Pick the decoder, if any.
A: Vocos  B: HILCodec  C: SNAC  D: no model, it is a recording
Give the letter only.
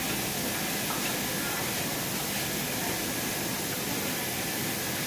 D